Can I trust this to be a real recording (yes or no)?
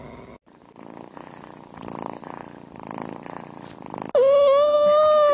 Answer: yes